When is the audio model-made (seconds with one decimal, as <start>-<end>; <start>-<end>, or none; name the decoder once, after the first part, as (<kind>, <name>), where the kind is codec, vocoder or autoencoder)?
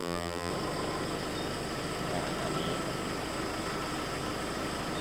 0.0-0.5 (vocoder, BigVGAN v2)